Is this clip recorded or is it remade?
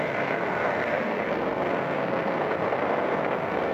remade